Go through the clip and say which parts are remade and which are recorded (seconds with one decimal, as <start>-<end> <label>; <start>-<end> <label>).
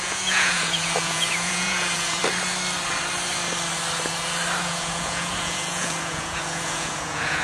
0.0-2.2 remade; 2.2-4.6 recorded; 4.6-7.4 remade